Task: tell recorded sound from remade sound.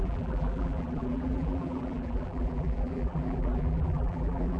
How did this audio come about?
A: remade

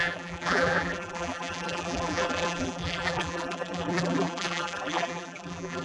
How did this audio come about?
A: remade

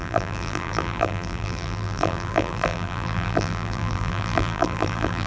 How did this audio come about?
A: remade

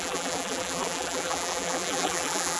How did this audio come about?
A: remade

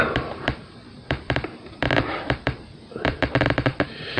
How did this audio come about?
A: remade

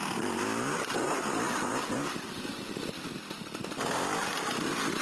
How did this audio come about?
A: recorded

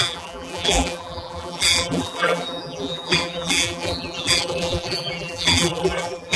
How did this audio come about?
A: remade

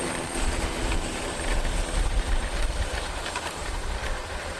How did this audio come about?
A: remade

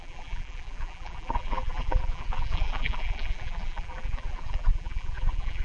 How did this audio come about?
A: remade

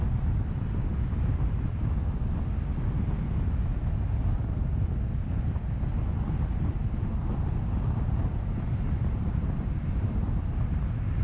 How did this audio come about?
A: recorded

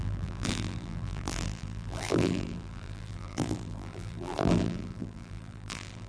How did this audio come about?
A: remade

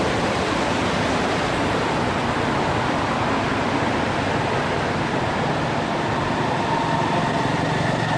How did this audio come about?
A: recorded